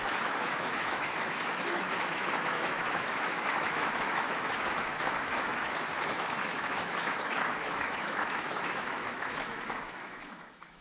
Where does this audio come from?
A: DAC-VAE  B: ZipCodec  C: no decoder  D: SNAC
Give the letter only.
A